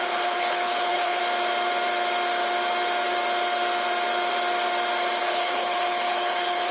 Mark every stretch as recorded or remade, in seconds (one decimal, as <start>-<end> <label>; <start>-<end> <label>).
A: 0.0-1.2 remade; 1.2-5.2 recorded; 5.2-6.7 remade